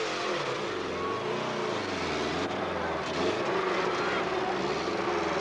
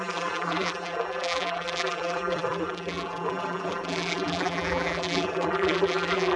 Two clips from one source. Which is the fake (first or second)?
second